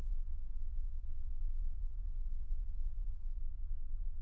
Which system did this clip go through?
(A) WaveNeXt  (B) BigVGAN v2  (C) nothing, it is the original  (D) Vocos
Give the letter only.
D